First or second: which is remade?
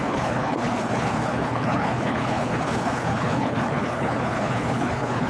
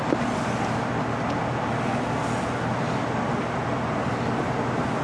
first